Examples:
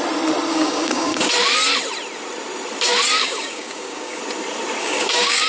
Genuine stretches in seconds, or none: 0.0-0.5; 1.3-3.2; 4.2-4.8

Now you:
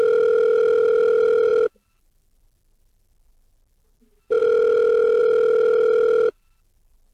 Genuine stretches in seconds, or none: 0.0-7.1

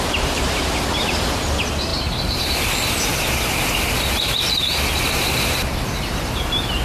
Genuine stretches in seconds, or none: 0.0-6.8

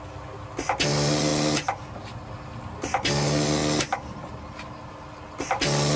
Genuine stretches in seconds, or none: 0.0-6.0

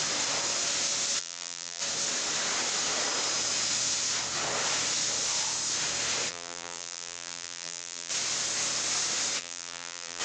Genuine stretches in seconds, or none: 0.0-1.2; 1.8-6.3; 8.1-9.4

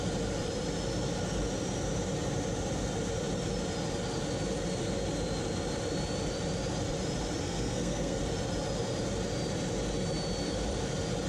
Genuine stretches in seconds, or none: 0.0-7.4; 8.2-11.3

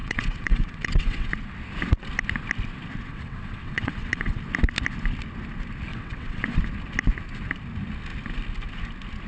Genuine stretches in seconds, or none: 1.3-3.0; 4.4-5.9; 6.6-9.3